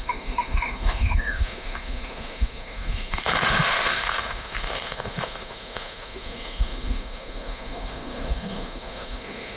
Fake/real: fake